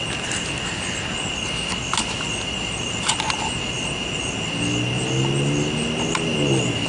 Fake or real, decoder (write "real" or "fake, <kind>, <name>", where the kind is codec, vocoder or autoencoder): real